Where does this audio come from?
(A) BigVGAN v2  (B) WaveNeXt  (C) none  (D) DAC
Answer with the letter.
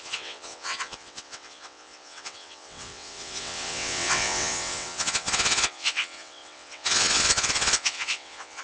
B